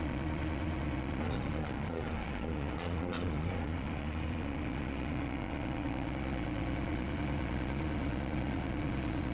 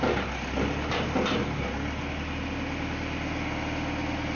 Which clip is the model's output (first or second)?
first